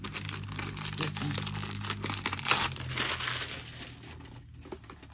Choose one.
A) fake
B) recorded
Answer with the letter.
B